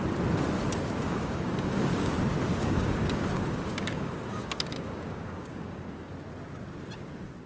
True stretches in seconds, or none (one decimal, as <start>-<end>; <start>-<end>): 0.0-1.0; 2.1-2.6; 6.1-7.5